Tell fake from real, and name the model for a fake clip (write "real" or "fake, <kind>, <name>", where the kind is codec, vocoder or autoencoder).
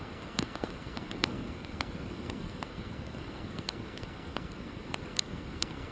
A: fake, codec, SNAC